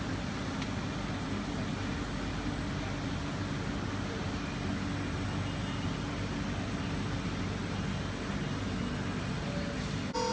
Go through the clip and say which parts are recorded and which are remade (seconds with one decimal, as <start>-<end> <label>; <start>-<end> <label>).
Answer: 0.0-10.3 recorded